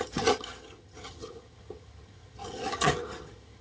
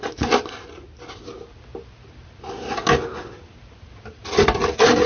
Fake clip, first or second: first